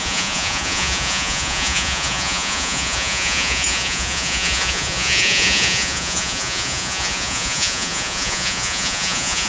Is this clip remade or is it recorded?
remade